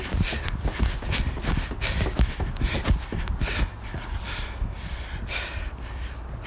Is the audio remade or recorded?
recorded